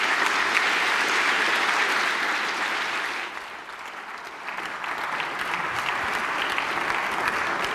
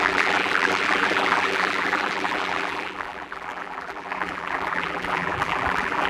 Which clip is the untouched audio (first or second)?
first